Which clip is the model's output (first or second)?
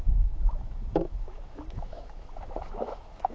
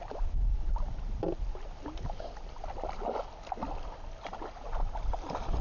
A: first